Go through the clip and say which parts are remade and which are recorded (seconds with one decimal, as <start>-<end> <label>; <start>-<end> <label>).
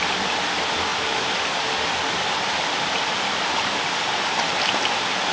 0.0-5.3 recorded